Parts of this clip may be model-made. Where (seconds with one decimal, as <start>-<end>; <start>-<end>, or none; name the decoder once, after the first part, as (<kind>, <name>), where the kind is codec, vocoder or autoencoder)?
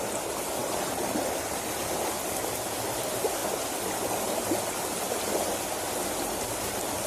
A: none